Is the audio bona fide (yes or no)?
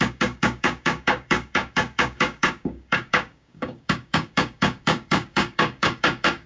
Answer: no